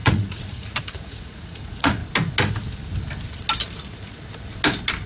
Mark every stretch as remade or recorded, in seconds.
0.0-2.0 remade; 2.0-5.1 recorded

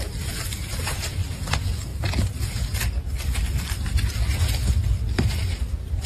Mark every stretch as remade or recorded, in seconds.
0.0-6.1 remade

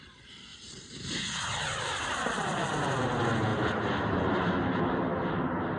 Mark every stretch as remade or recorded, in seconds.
0.0-0.5 recorded; 0.5-1.7 remade; 1.7-3.5 recorded; 3.5-4.8 remade; 4.8-5.8 recorded

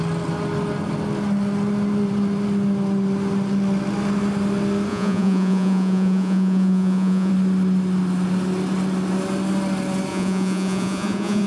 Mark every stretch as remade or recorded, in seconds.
0.0-4.9 recorded; 4.9-7.3 remade; 7.3-10.1 recorded; 10.1-11.5 remade

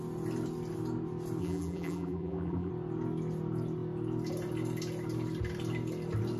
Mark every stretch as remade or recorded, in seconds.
0.0-1.4 recorded; 1.4-2.7 remade; 2.7-6.4 recorded

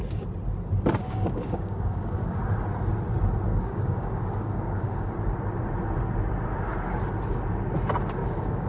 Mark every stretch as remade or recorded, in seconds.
0.0-1.0 recorded; 1.0-2.4 remade; 2.4-3.5 recorded; 3.5-5.1 remade; 5.1-8.2 recorded; 8.2-8.7 remade